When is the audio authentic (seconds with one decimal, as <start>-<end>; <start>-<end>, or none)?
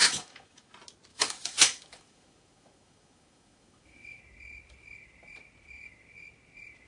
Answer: 0.7-1.1; 4.2-6.9